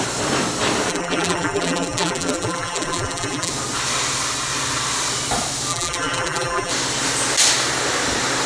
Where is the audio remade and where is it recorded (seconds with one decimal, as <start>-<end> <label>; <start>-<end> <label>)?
0.0-0.9 recorded; 0.9-3.5 remade; 3.5-5.7 recorded; 5.7-6.7 remade; 6.7-8.5 recorded